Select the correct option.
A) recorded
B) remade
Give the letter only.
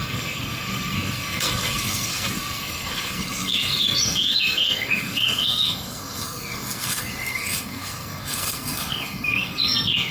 B